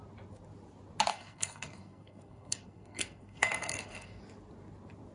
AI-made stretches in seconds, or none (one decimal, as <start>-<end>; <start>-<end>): 1.1-4.2